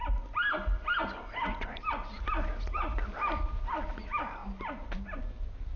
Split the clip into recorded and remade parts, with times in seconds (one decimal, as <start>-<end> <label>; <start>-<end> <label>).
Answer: 0.0-1.5 recorded; 1.5-2.2 remade; 2.2-4.4 recorded; 4.4-5.2 remade; 5.2-5.8 recorded